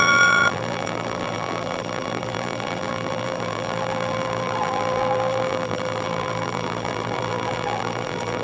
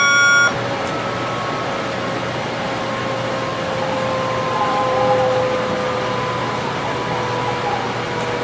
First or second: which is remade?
first